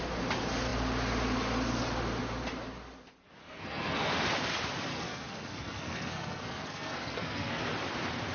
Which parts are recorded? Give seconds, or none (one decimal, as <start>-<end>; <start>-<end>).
0.0-3.4; 4.1-4.9; 7.6-8.3